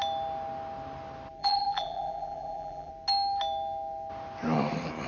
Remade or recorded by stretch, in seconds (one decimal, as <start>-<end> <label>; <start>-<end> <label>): 0.0-1.4 recorded; 1.4-2.9 remade; 2.9-5.1 recorded